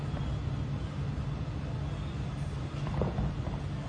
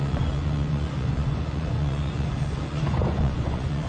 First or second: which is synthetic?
second